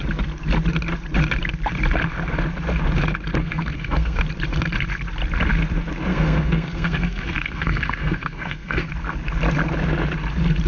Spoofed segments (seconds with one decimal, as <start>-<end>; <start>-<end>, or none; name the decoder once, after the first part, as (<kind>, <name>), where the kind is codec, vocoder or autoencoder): 3.4-4.2 (codec, SNAC); 6.1-8.9